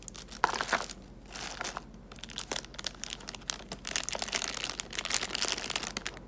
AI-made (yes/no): no